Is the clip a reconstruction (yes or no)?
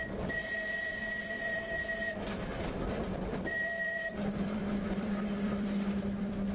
yes